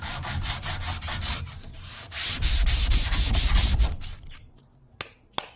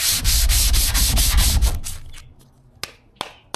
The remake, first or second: first